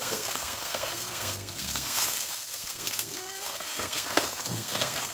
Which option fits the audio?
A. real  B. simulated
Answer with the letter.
B